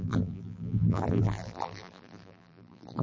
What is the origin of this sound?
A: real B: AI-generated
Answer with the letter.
B